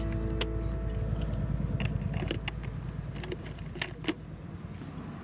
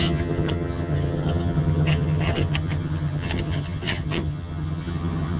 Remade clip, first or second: second